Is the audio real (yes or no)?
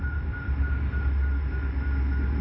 yes